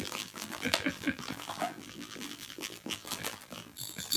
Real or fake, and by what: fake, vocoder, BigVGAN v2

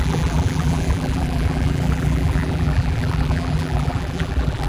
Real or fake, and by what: fake, vocoder, BigVGAN v2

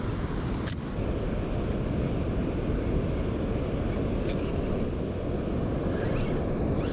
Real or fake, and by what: real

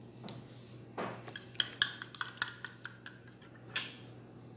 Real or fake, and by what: real